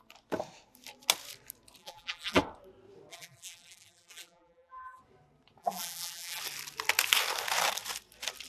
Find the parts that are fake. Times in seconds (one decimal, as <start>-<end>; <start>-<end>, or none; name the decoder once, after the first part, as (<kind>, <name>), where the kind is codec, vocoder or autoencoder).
1.8-2.4 (vocoder, BigVGAN v2); 3.1-5.0; 5.6-6.4